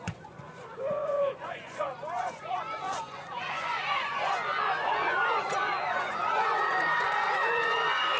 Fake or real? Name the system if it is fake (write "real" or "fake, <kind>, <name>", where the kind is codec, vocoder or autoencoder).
fake, vocoder, Vocos